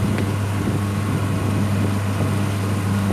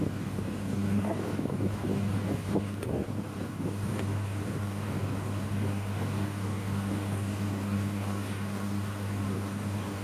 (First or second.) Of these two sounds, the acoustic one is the first